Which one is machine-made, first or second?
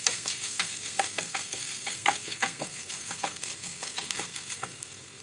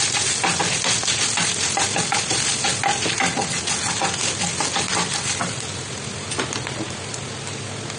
first